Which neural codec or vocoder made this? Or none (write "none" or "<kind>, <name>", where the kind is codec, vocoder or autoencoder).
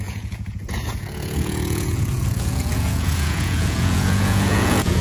vocoder, Vocos